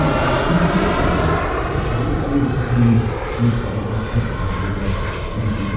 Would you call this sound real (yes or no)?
no